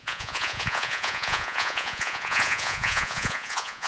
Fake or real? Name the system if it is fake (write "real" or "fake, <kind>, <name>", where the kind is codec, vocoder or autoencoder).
fake, vocoder, Vocos